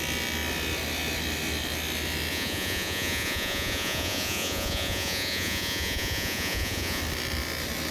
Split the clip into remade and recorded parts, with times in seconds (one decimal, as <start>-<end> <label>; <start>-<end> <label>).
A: 0.0-2.3 recorded; 2.3-7.0 remade; 7.0-7.9 recorded